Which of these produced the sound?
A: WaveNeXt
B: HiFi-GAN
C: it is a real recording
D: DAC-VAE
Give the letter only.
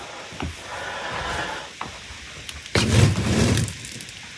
C